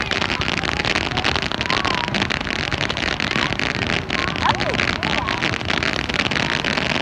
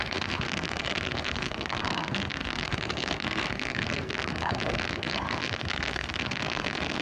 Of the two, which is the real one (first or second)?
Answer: first